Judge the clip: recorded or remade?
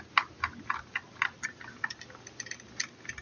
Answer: recorded